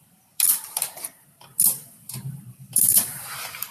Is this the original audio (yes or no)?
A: no